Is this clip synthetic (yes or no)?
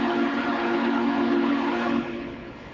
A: yes